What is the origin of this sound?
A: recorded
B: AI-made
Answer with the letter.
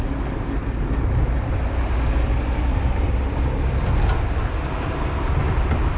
A